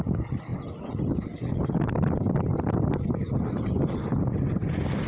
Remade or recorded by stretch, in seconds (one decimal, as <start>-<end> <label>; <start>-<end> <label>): 0.0-5.1 recorded